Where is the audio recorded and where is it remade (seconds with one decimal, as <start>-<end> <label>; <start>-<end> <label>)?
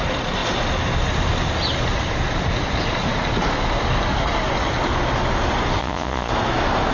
0.0-5.8 recorded; 5.8-6.3 remade; 6.3-6.9 recorded